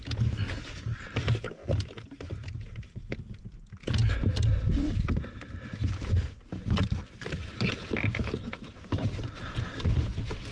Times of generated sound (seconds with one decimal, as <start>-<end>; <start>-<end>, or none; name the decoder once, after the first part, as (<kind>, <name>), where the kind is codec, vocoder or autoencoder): none

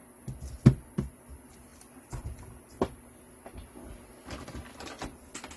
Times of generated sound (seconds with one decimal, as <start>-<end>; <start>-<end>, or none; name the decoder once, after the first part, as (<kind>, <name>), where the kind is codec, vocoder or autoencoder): none

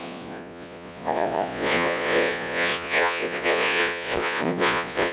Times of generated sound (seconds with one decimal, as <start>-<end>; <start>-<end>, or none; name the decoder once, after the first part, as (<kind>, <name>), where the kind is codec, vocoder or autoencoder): 0.0-5.1 (vocoder, Vocos)

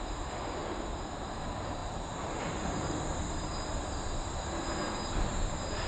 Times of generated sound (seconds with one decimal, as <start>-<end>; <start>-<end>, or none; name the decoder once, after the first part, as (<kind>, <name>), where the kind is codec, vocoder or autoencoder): 0.0-0.6 (vocoder, BigVGAN v2); 1.2-3.5; 5.3-5.9

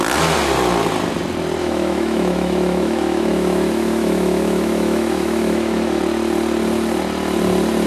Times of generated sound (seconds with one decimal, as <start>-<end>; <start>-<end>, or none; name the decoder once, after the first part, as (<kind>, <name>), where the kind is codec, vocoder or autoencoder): 1.6-6.0 (autoencoder, DAC-VAE)

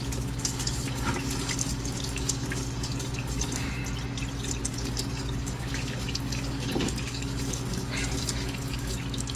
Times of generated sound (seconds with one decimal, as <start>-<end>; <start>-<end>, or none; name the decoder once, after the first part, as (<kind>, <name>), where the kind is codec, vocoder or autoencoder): 0.0-3.8 (codec, DAC); 4.7-9.4

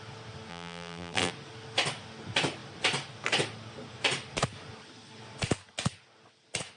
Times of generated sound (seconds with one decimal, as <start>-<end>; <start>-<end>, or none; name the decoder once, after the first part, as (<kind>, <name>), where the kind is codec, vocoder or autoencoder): 0.5-1.3 (vocoder, BigVGAN v2)

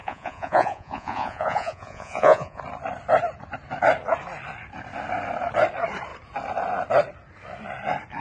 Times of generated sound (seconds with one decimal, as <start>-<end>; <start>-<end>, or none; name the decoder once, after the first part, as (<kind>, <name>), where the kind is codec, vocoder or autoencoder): 0.0-2.6 (vocoder, Vocos)